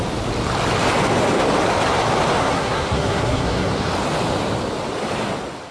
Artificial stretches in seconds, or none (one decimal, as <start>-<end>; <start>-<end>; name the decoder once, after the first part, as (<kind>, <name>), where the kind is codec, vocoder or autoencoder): 2.4-3.7 (codec, SNAC)